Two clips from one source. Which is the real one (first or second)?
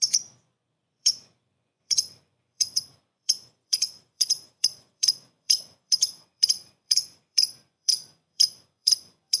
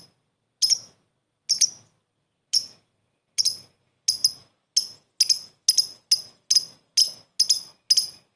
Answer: second